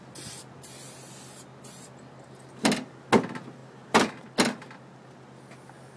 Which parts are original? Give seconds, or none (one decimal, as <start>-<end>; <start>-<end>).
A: 0.0-6.0